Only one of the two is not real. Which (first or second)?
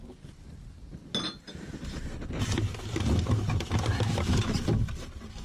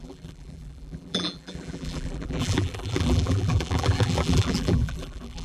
second